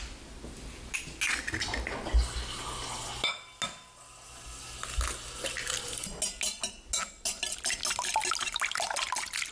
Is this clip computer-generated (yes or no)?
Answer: no